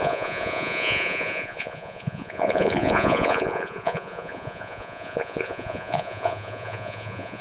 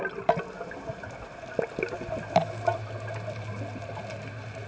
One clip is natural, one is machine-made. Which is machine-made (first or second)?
first